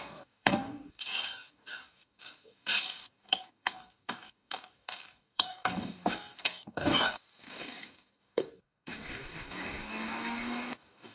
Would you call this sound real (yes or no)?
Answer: no